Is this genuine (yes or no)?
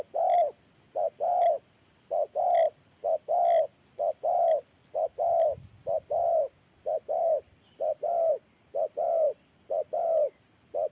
yes